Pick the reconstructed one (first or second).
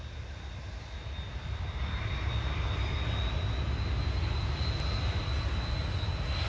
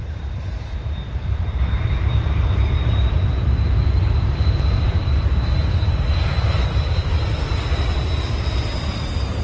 second